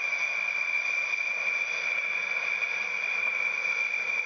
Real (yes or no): yes